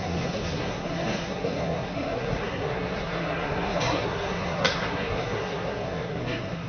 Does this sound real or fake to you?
fake